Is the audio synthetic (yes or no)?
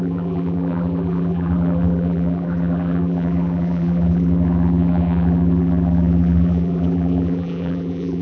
yes